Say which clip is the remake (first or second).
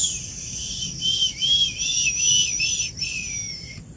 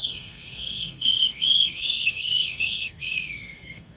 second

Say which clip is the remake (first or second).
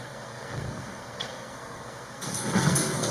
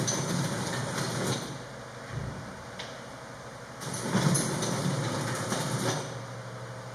first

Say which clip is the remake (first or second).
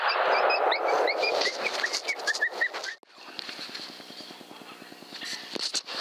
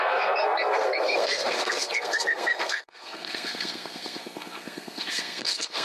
second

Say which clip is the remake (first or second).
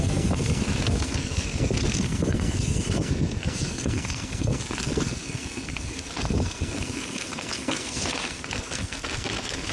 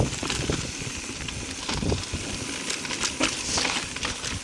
first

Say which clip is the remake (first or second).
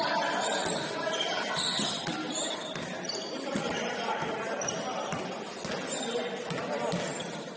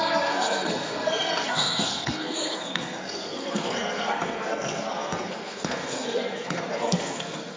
second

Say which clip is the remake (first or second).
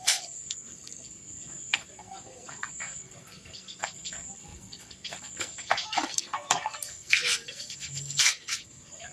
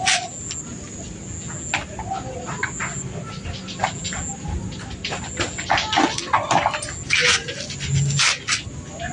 first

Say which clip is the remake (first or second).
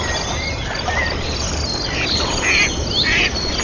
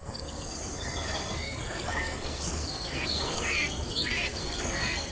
second